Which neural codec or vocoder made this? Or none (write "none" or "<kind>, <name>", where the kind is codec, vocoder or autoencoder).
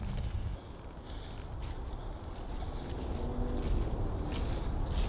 none